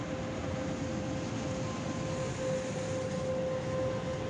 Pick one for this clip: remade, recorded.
recorded